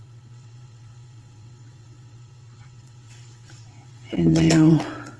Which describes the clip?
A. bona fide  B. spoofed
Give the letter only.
B